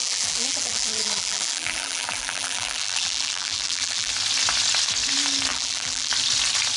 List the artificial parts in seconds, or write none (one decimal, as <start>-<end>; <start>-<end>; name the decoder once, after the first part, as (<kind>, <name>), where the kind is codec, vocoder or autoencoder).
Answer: 0.0-4.1 (vocoder, BigVGAN v2); 5.5-6.1